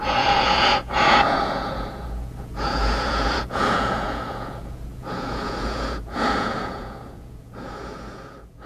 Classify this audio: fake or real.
fake